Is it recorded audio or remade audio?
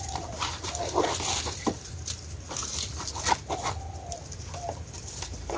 recorded